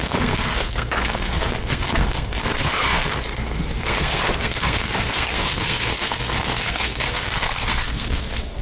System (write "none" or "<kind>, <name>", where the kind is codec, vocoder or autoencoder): codec, SNAC